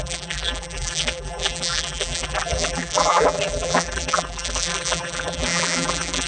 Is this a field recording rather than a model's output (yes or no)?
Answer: no